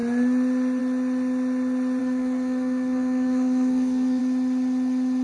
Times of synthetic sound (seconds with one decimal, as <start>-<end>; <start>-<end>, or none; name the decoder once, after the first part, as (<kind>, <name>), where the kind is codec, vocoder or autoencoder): 2.0-4.2 (codec, SNAC)